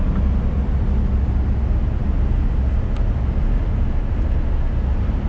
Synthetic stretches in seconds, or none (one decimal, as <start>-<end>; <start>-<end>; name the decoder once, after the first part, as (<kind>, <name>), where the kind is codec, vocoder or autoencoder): none